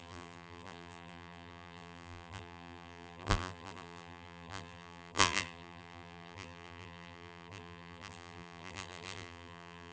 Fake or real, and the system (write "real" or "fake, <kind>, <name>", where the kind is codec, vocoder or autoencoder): fake, vocoder, BigVGAN v2